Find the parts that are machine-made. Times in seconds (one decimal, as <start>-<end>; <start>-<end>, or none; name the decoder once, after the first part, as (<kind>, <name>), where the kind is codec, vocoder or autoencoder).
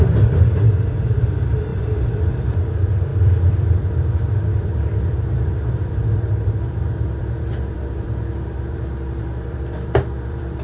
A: 0.0-10.6 (vocoder, BigVGAN v2)